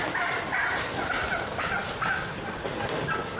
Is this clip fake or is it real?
real